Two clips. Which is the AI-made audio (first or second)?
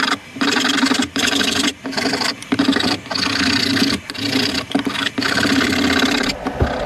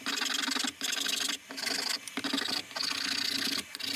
first